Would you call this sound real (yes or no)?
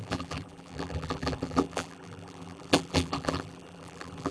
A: no